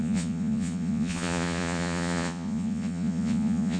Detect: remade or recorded remade